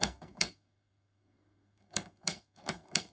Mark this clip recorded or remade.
remade